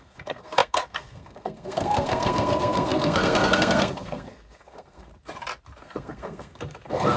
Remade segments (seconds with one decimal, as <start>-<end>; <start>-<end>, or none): 0.0-5.1; 5.8-7.2